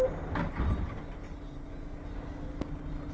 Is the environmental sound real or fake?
real